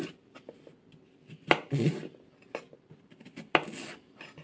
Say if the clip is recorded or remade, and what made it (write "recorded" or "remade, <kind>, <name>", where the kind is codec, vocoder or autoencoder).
recorded